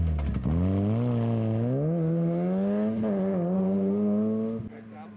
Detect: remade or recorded recorded